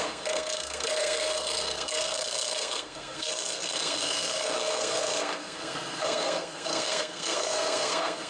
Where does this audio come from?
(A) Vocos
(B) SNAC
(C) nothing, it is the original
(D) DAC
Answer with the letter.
B